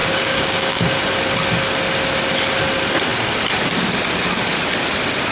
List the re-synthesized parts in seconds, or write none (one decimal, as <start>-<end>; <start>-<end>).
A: 0.0-0.8